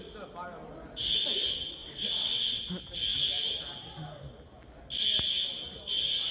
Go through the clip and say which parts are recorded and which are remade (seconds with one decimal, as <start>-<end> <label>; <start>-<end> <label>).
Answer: 0.0-1.8 recorded; 1.8-2.6 remade; 2.6-6.3 recorded